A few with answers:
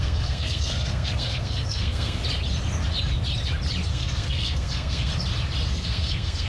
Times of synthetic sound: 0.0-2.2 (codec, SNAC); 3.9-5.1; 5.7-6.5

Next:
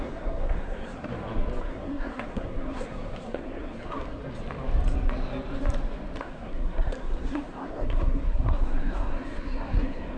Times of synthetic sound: 0.0-1.1 (codec, SNAC); 1.6-4.2; 6.2-10.2

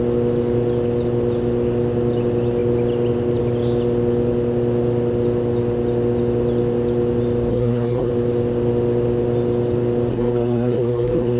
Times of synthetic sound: 7.5-8.1 (codec, SNAC); 10.1-11.4

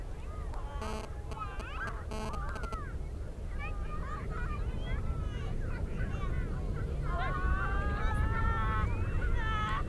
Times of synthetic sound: none

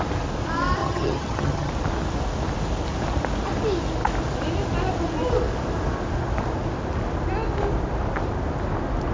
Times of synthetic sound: 0.8-1.7 (vocoder, HiFi-GAN)